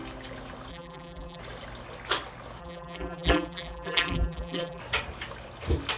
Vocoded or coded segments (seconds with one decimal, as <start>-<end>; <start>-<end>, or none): 0.7-1.4; 2.6-4.8